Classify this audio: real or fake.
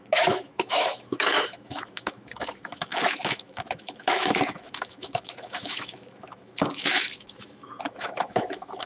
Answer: fake